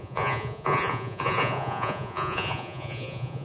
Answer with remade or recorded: remade